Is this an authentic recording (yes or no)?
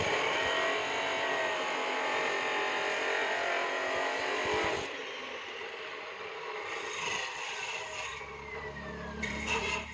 no